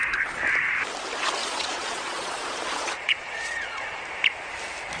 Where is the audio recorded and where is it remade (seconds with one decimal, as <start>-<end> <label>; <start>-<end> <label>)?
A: 0.0-1.4 recorded; 1.4-4.0 remade; 4.0-5.0 recorded